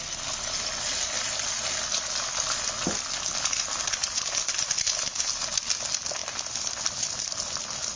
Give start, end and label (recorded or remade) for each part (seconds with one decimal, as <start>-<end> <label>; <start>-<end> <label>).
0.0-8.0 recorded